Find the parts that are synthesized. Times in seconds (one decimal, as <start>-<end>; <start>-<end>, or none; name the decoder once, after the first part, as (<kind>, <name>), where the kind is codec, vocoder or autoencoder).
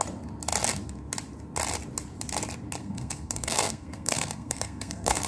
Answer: 2.8-5.3 (codec, SNAC)